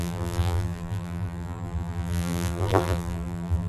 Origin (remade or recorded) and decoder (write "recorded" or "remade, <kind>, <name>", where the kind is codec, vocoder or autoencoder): remade, vocoder, BigVGAN v2